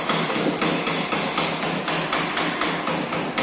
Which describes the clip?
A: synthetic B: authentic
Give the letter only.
B